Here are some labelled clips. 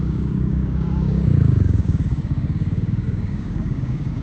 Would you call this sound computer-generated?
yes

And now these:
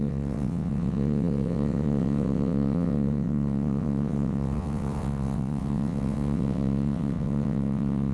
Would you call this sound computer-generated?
yes